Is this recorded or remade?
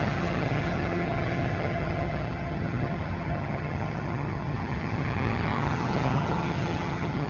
remade